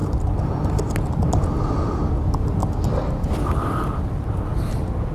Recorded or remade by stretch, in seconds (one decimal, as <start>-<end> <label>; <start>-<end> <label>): 0.0-5.1 recorded